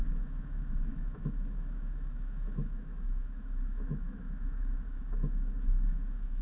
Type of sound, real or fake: fake